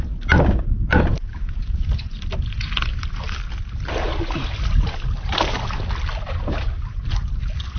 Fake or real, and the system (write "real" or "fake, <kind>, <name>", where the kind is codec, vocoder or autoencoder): real